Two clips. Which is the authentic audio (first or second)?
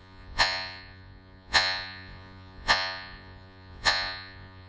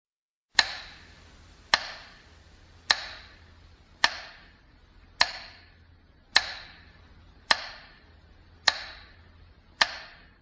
second